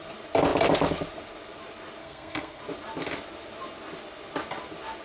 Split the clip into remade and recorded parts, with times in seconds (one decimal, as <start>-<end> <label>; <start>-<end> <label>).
0.0-2.0 recorded; 2.0-2.6 remade; 2.6-5.0 recorded